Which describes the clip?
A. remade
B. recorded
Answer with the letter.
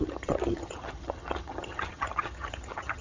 A